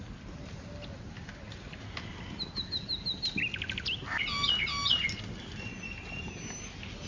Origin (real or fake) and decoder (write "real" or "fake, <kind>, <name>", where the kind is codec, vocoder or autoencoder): real